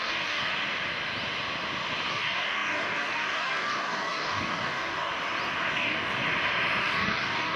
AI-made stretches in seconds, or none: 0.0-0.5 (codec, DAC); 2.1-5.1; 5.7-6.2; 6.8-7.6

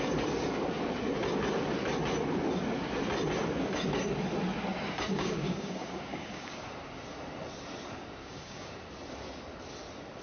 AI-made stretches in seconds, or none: 5.1-6.7 (codec, DAC); 8.2-8.7

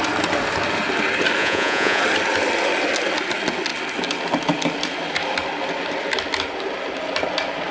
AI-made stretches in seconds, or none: 1.4-2.0 (vocoder, Vocos)

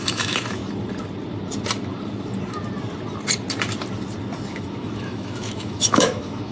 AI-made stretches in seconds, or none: 0.0-0.6 (autoencoder, DAC-VAE); 4.5-6.5